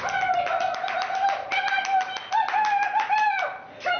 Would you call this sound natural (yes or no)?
yes